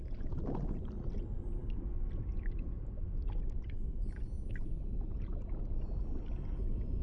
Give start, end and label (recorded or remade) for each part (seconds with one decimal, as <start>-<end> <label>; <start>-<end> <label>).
0.0-7.0 recorded